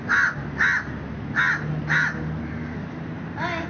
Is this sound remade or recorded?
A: recorded